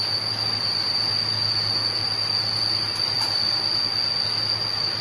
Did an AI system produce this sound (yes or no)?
no